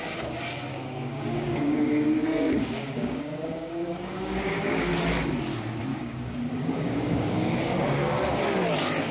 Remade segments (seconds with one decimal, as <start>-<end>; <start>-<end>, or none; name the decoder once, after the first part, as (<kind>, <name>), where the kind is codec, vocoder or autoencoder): 0.7-4.9 (codec, DAC); 5.9-8.2